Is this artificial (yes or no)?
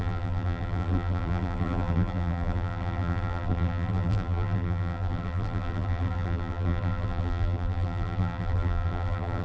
yes